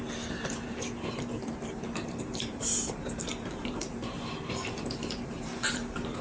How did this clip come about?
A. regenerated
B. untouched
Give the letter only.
A